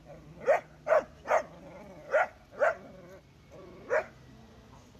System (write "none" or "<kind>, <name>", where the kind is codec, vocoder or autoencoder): none